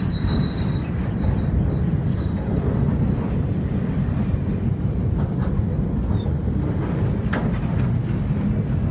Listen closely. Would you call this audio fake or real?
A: real